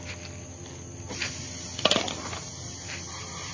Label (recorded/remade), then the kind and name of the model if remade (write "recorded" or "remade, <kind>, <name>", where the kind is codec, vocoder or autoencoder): recorded